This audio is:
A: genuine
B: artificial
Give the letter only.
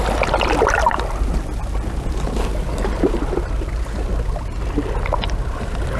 A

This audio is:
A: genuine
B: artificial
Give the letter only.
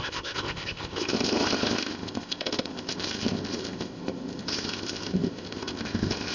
B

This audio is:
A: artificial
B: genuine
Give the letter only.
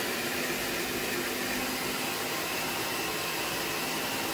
B